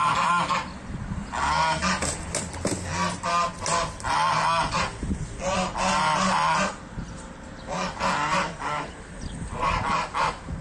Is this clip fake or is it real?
real